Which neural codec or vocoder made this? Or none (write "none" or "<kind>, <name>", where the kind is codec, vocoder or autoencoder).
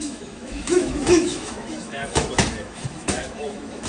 autoencoder, DAC-VAE